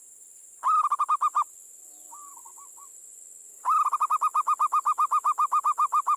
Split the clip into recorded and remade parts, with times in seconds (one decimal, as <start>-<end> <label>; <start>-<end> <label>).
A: 0.0-6.2 recorded